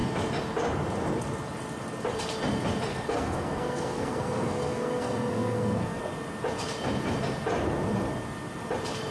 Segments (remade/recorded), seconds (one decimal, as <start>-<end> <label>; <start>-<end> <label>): 0.0-2.9 recorded; 2.9-6.0 remade; 6.0-9.1 recorded